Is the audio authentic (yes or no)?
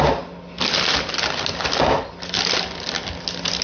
yes